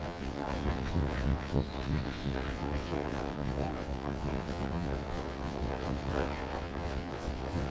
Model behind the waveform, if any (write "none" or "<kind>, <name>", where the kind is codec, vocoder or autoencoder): vocoder, WaveNeXt